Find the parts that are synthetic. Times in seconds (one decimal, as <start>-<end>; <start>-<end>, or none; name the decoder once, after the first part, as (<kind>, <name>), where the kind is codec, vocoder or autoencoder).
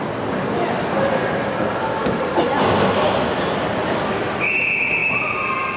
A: none